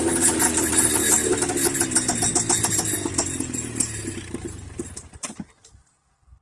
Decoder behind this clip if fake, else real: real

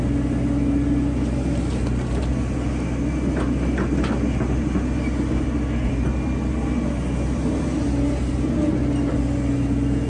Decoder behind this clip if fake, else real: real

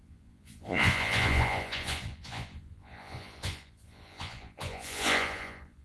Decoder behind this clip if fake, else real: fake, vocoder, Vocos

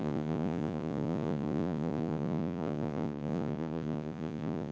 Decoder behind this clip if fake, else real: fake, vocoder, Vocos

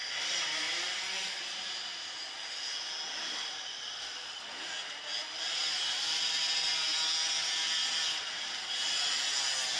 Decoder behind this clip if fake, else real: real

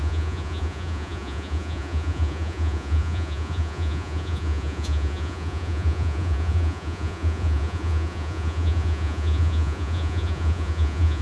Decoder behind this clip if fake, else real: fake, vocoder, Vocos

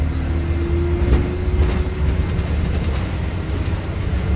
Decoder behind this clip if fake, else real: real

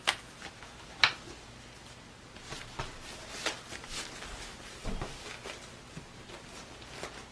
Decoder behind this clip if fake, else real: real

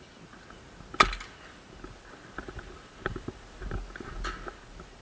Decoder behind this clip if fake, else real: real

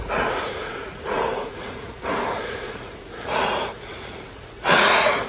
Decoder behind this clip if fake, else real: fake, vocoder, Vocos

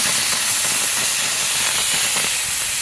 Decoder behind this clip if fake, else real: real